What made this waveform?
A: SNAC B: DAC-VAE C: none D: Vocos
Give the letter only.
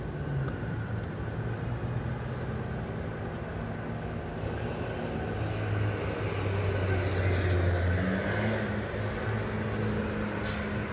C